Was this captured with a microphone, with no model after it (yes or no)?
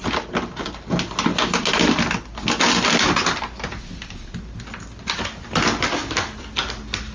yes